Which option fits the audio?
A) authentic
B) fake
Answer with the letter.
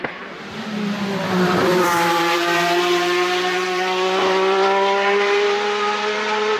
B